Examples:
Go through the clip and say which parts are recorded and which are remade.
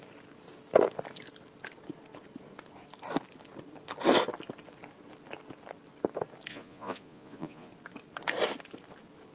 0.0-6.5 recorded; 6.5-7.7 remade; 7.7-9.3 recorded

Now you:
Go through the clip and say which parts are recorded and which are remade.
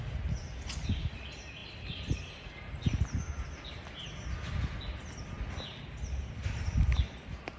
0.0-7.6 recorded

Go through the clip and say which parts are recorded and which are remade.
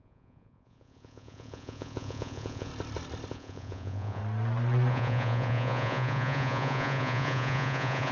0.0-2.7 remade; 2.7-3.3 recorded; 3.3-4.2 remade; 4.2-4.9 recorded; 4.9-8.1 remade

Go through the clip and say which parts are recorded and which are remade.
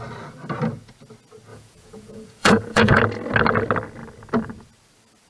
0.0-1.5 recorded; 1.5-3.0 remade; 3.0-5.3 recorded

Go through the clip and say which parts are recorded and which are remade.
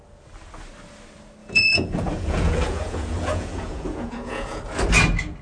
0.0-1.4 recorded; 1.4-4.6 remade; 4.6-5.4 recorded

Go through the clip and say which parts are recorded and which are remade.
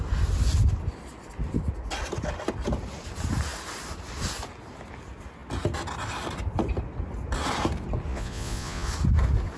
0.0-8.1 recorded; 8.1-8.9 remade; 8.9-9.6 recorded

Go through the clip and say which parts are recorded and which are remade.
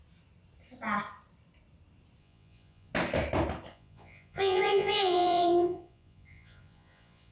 0.0-2.2 recorded; 2.2-2.9 remade; 2.9-3.7 recorded; 3.7-7.3 remade